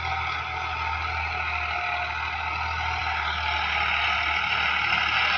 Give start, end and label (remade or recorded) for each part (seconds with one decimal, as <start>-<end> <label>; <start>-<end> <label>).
0.0-5.4 recorded